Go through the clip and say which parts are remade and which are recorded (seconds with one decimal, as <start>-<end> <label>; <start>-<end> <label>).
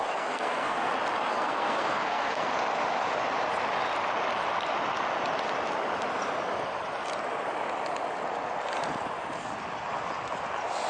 0.0-0.9 remade; 0.9-1.3 recorded; 1.3-2.5 remade; 2.5-10.9 recorded